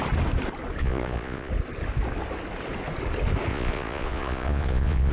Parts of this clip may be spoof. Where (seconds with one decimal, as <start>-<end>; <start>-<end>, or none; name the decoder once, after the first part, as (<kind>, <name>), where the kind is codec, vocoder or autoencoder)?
0.8-1.5 (vocoder, Vocos); 3.5-5.1